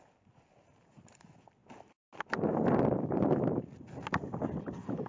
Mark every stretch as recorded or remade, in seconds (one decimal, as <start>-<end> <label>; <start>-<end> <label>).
0.0-5.1 recorded